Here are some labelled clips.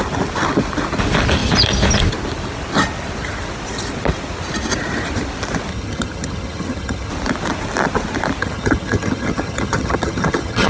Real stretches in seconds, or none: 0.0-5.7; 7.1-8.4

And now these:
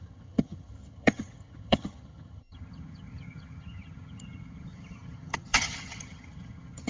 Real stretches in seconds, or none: none

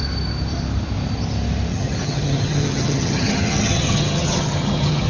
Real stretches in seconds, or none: 0.0-1.7

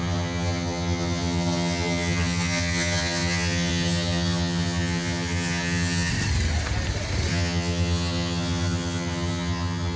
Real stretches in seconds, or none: 6.1-7.3

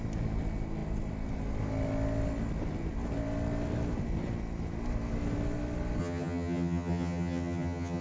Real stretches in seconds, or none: 0.0-6.0